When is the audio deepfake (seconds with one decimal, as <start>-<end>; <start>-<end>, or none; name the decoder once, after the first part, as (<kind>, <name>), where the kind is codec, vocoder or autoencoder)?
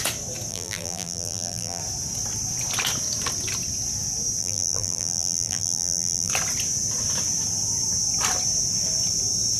0.5-1.8 (vocoder, BigVGAN v2); 4.4-6.3